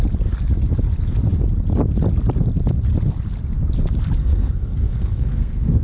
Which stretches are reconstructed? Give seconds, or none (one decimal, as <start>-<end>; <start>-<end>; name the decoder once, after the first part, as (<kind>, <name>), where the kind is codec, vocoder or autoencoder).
4.2-5.8 (codec, SNAC)